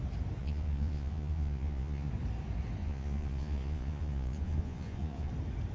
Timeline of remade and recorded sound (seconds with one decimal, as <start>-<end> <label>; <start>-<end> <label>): 0.0-0.4 recorded; 0.4-2.1 remade; 2.1-2.8 recorded; 2.8-5.3 remade; 5.3-5.7 recorded